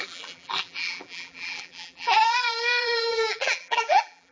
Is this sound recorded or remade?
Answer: remade